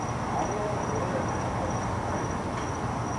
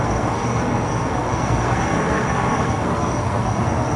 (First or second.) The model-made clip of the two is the second